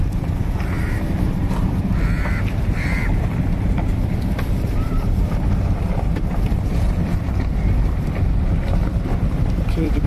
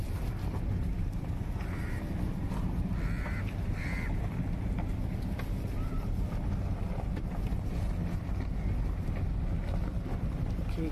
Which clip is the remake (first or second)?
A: first